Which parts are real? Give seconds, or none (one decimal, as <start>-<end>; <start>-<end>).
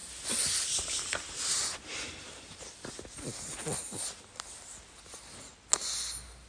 0.0-6.5